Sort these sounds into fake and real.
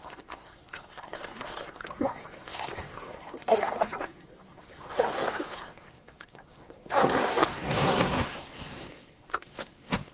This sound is fake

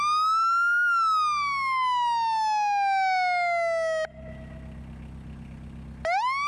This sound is real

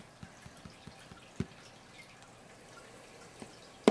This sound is real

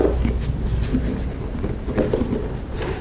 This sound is real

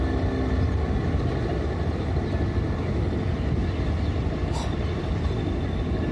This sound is real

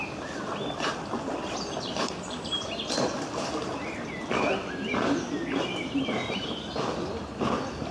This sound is real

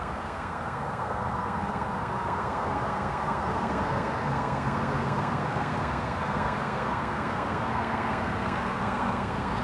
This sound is fake